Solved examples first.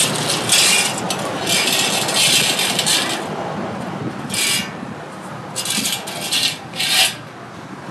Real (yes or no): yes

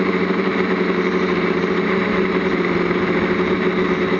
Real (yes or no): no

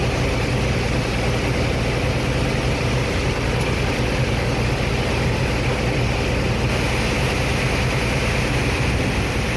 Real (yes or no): yes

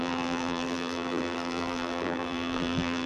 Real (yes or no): no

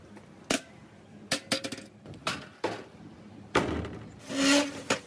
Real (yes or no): yes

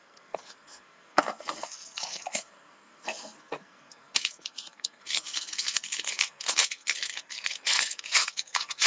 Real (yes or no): no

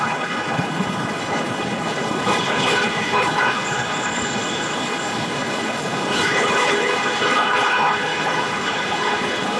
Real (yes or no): no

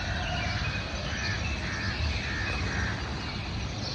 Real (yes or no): yes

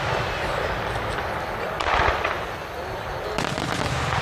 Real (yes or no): yes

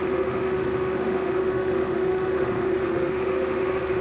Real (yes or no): no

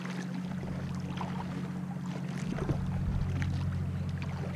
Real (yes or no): yes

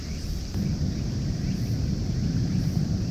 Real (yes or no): no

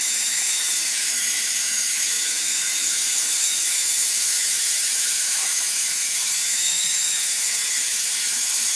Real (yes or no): no